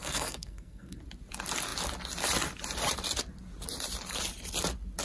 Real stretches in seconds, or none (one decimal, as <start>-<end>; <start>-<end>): 1.0-5.0